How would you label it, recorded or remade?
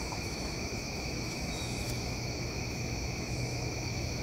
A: remade